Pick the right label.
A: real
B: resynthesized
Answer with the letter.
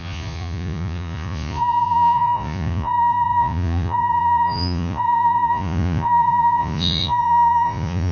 B